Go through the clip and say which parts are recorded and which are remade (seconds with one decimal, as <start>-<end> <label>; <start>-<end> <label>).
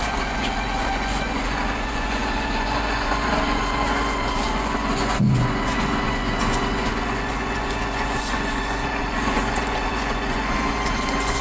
0.0-11.4 remade